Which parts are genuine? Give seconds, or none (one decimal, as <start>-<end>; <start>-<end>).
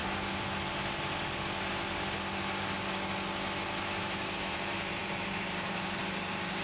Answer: 0.0-4.0